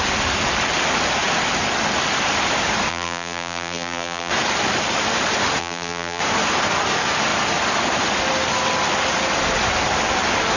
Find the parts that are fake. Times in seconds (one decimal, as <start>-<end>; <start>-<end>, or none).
2.9-4.3; 5.6-6.2